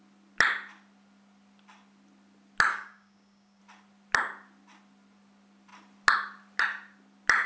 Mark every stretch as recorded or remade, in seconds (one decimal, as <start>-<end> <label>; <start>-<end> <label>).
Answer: 0.0-2.7 recorded; 2.7-3.6 remade; 3.6-7.5 recorded